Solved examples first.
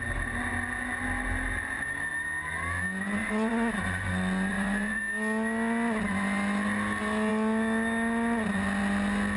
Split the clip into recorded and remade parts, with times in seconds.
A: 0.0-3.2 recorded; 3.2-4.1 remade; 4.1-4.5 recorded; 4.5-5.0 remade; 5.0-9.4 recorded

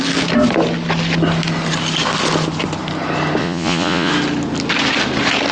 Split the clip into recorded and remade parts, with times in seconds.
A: 0.0-3.4 recorded; 3.4-4.1 remade; 4.1-5.5 recorded

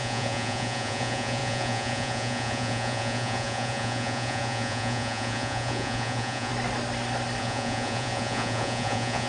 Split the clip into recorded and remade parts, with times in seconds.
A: 0.0-6.5 remade; 6.5-7.4 recorded; 7.4-9.3 remade

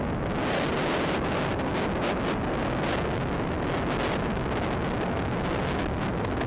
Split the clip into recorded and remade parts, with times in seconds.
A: 0.0-6.5 recorded

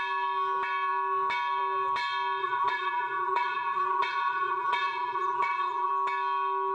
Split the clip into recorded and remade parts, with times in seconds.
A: 0.0-2.4 recorded; 2.4-5.9 remade; 5.9-6.7 recorded

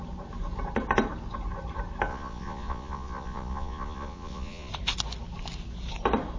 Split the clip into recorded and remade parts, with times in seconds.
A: 0.0-2.1 recorded; 2.1-4.7 remade; 4.7-6.4 recorded

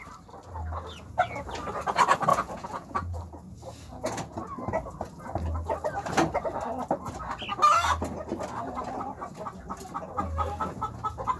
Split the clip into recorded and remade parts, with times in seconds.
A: 0.0-2.3 recorded; 2.3-3.2 remade; 3.2-11.4 recorded